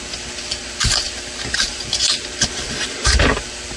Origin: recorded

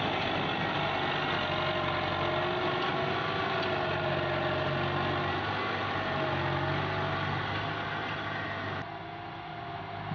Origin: recorded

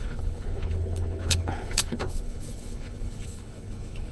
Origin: remade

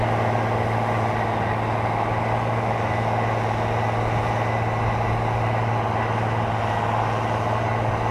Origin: recorded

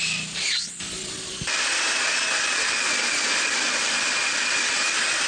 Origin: recorded